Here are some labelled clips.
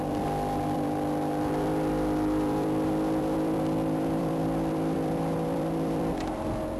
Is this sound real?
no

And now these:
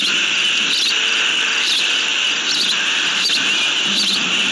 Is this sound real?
no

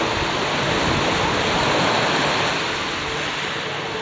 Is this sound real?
yes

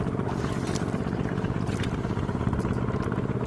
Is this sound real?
yes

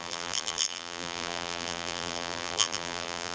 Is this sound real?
no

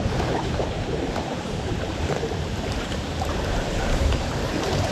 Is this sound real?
no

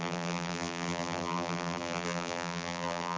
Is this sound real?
no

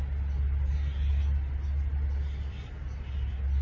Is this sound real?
yes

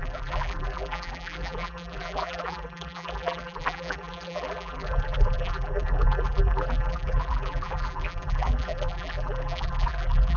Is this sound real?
no